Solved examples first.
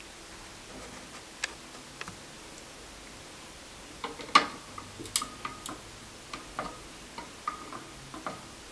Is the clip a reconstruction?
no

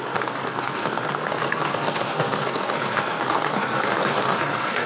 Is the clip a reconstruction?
yes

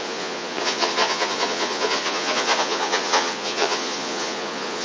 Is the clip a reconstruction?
yes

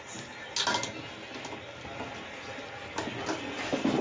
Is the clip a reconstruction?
no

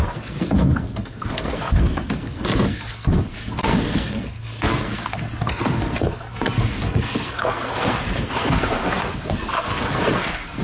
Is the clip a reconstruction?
yes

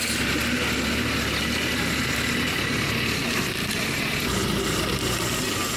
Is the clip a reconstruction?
no